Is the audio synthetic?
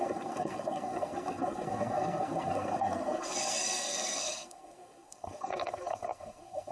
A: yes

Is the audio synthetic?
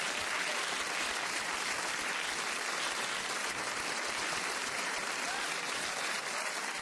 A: no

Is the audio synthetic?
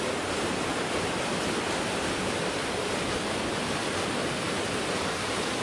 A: no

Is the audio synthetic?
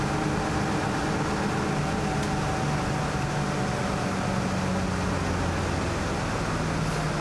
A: no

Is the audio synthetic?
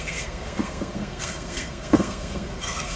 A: yes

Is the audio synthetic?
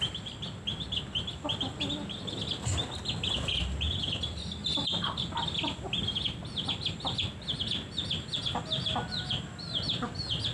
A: no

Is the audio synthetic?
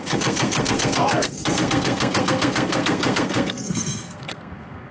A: yes